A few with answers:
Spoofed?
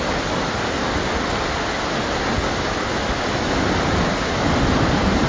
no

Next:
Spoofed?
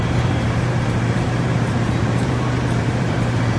yes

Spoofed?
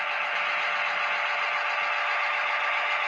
no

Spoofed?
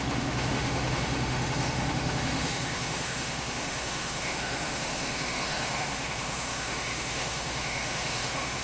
yes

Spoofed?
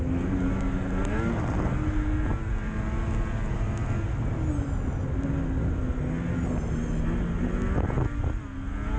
no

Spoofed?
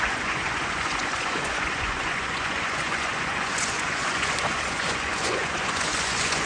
yes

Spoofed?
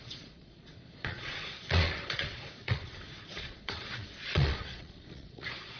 yes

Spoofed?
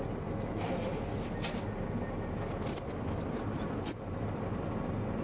no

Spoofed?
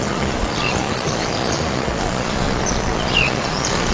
yes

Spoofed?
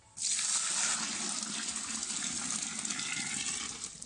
no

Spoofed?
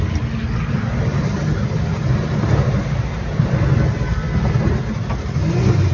no